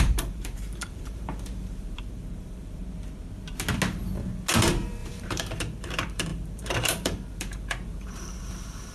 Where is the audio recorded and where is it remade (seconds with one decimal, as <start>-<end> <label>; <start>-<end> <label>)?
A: 0.0-2.8 remade; 2.8-4.6 recorded; 4.6-8.9 remade